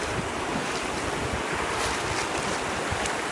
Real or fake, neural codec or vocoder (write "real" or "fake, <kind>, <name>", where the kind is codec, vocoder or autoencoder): real